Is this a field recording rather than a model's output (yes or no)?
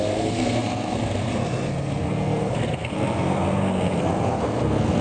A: no